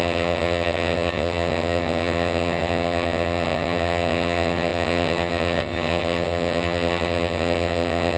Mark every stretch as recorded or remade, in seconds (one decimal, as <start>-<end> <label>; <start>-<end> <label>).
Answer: 0.0-8.2 remade